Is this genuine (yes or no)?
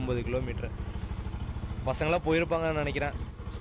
yes